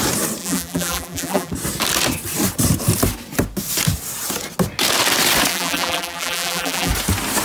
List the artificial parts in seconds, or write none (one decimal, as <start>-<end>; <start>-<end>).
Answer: 0.4-1.5; 5.5-6.9